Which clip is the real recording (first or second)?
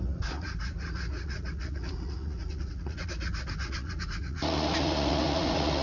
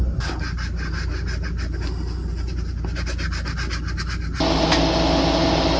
second